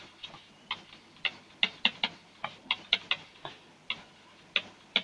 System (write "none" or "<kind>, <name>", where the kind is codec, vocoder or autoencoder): none